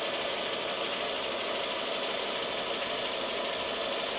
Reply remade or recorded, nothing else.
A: recorded